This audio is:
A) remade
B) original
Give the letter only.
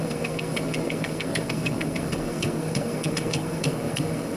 A